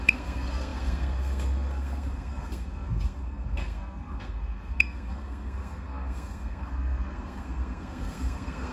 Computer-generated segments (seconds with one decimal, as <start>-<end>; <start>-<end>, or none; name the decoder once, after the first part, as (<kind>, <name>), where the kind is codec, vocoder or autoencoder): 0.0-8.7 (codec, SNAC)